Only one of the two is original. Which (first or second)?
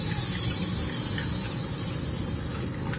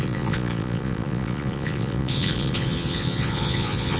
first